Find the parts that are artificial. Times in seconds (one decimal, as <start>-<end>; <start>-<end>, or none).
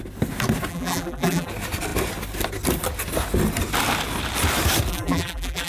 0.7-1.5; 4.9-5.7